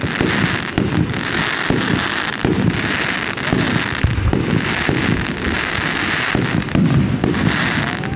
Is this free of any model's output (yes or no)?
yes